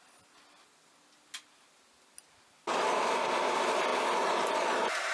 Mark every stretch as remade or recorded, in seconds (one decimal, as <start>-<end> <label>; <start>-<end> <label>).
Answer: 0.0-5.1 recorded